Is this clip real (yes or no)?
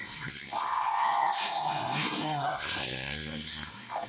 no